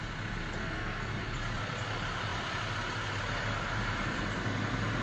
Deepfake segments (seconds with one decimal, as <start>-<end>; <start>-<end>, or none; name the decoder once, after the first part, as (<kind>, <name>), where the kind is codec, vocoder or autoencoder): 0.6-1.1 (codec, SNAC)